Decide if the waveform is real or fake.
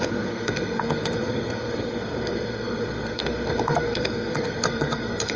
fake